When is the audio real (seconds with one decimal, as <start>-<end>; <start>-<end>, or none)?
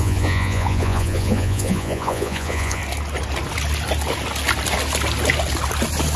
2.8-6.2